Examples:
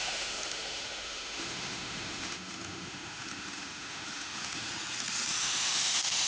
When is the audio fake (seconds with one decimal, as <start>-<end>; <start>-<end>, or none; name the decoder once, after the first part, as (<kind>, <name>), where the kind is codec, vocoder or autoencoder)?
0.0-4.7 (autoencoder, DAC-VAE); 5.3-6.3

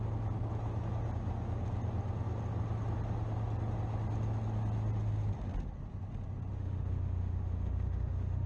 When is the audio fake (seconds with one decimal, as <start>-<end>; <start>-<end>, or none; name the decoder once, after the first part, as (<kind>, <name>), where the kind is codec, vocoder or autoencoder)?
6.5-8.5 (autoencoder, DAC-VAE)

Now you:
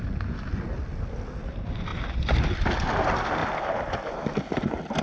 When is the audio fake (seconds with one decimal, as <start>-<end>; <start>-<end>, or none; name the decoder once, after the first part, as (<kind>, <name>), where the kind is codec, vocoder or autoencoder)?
none

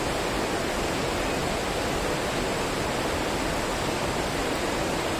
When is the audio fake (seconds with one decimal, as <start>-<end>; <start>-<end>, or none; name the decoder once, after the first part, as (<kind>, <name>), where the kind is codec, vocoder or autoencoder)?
none

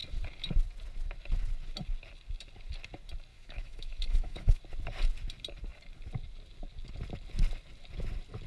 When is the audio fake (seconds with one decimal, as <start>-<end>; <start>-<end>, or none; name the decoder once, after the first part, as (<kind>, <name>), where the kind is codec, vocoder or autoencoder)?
3.3-4.6 (autoencoder, DAC-VAE)